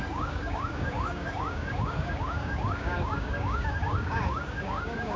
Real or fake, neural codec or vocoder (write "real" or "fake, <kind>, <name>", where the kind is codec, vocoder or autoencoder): fake, codec, DAC